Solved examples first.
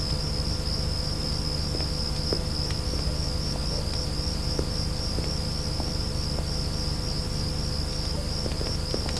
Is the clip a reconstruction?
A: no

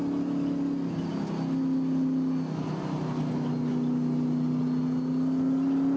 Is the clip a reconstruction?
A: no